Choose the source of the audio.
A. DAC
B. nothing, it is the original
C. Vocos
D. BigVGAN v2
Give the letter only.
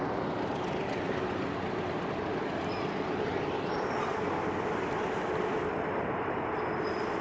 B